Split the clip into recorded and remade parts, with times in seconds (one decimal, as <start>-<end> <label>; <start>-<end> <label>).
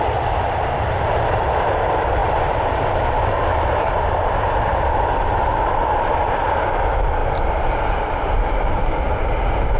0.0-9.8 remade